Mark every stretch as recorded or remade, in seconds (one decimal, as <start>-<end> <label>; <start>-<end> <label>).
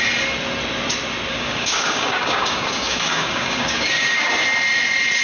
0.0-1.3 recorded; 1.3-4.3 remade; 4.3-5.2 recorded